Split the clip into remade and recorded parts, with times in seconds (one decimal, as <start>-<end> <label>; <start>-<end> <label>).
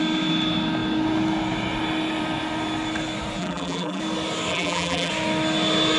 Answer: 0.0-3.4 recorded; 3.4-4.0 remade; 4.0-4.5 recorded; 4.5-5.1 remade; 5.1-6.0 recorded